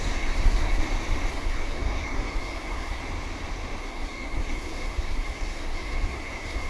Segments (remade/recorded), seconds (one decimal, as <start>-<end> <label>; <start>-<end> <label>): 0.0-0.8 remade; 0.8-1.3 recorded; 1.3-3.0 remade; 3.0-3.8 recorded; 3.8-6.7 remade